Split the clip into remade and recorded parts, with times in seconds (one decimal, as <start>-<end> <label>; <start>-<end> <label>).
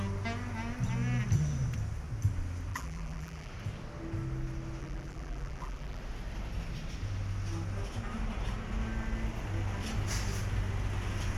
0.0-2.7 recorded; 2.7-3.5 remade; 3.5-4.8 recorded; 4.8-6.0 remade; 6.0-11.4 recorded